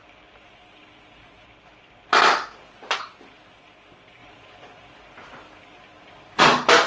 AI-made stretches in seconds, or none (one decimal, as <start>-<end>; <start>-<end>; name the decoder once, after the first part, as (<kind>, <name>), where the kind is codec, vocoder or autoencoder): none